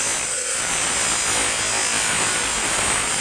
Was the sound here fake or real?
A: real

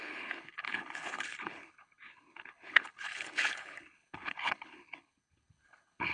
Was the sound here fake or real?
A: fake